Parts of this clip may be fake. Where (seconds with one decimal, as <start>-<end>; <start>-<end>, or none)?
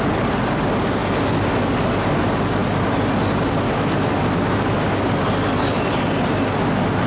none